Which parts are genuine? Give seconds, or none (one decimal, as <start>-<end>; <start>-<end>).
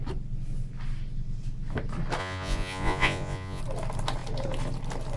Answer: 0.0-2.2; 3.6-5.2